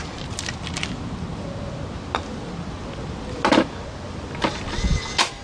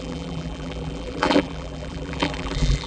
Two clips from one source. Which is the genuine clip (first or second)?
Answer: first